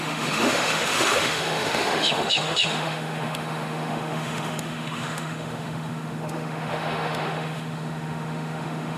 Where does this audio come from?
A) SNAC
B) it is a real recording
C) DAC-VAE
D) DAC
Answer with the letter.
C